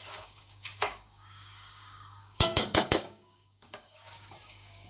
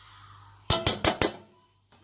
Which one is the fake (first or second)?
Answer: first